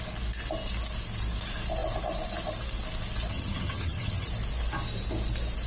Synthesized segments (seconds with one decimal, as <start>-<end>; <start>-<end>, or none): 3.3-4.3

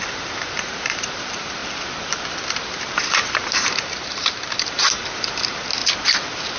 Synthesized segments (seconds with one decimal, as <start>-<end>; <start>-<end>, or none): 0.0-1.6; 2.4-5.8